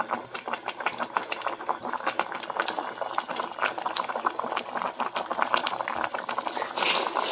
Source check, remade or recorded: recorded